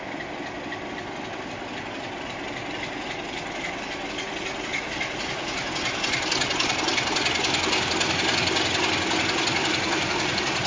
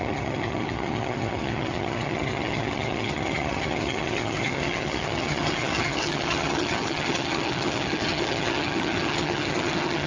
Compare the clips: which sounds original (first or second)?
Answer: first